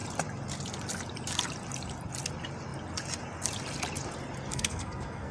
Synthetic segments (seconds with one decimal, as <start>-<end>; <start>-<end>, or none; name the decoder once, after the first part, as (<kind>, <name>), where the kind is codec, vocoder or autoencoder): 4.5-5.3 (codec, SNAC)